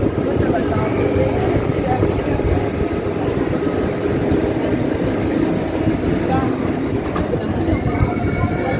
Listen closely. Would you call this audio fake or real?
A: real